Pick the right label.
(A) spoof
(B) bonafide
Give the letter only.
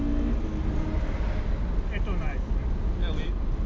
B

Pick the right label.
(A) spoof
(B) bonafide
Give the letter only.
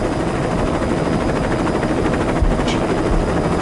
B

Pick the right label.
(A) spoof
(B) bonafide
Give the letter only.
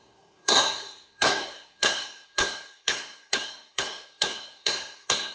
A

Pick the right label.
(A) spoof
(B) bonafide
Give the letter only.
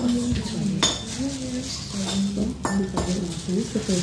B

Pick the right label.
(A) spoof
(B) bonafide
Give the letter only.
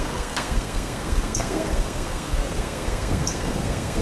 A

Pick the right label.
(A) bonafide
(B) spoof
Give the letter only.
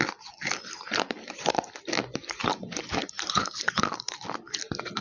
A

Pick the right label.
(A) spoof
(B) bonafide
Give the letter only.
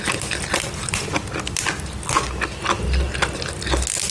B